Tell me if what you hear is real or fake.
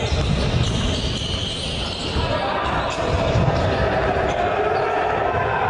real